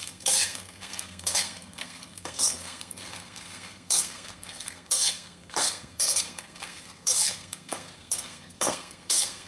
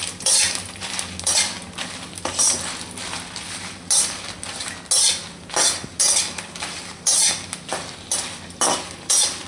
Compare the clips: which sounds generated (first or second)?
first